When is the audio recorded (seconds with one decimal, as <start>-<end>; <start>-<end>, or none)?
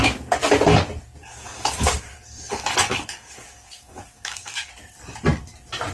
0.0-1.2; 4.7-5.9